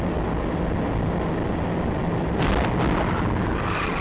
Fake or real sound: real